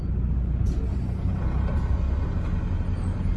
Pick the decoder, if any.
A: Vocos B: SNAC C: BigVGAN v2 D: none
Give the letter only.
D